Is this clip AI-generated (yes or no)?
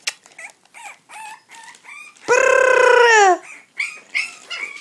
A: no